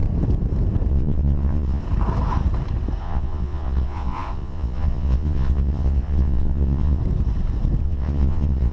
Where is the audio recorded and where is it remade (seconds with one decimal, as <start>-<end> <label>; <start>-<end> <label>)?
0.0-0.9 recorded; 0.9-1.8 remade; 1.8-3.0 recorded; 3.0-7.0 remade; 7.0-7.8 recorded; 7.8-8.7 remade